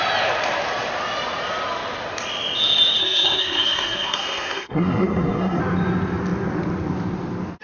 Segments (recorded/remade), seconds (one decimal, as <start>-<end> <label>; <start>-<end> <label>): 0.0-3.0 recorded; 3.0-5.6 remade; 5.6-7.6 recorded